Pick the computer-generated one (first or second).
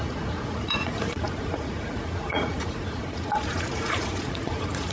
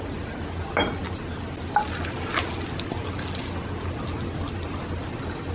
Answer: first